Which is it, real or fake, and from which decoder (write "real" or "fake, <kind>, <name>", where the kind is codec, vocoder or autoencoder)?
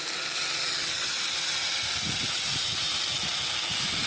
real